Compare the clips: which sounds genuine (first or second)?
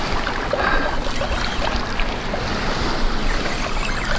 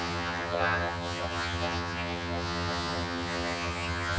first